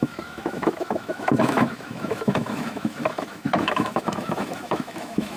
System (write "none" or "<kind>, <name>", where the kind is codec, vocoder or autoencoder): autoencoder, DAC-VAE